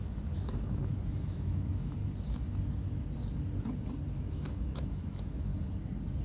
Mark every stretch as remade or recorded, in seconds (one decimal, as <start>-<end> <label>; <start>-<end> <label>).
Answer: 0.0-2.0 remade; 2.0-4.1 recorded; 4.1-5.5 remade; 5.5-6.2 recorded